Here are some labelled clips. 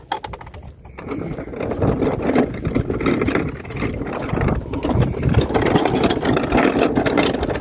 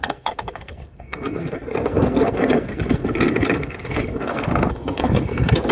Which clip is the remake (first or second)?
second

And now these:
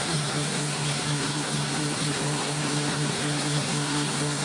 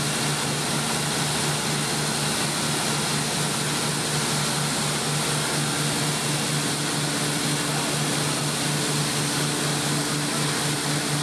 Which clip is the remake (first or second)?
first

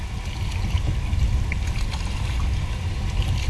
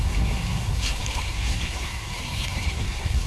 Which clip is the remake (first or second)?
second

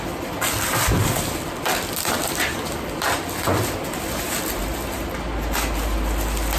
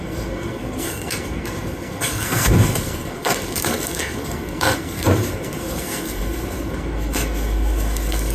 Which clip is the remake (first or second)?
second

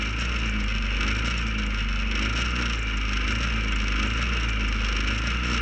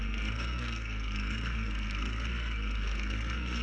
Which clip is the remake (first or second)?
second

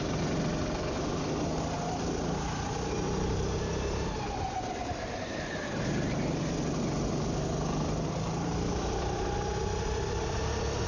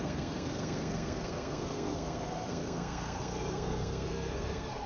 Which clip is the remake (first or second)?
second